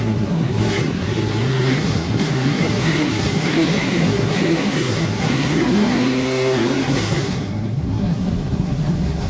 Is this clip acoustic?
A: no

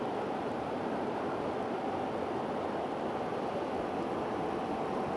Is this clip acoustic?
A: yes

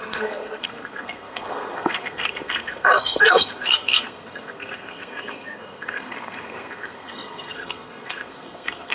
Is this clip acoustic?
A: no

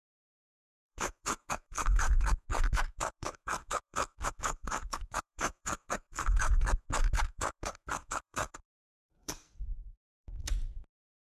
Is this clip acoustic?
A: no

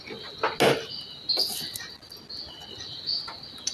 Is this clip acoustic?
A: yes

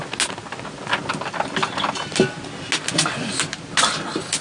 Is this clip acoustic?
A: yes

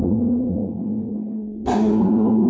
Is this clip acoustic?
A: no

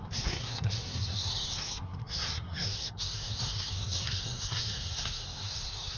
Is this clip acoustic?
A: no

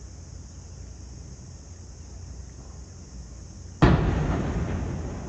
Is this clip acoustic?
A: yes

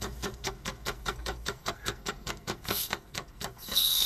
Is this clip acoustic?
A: no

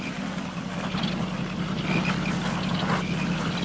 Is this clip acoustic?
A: yes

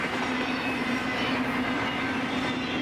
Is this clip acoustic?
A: yes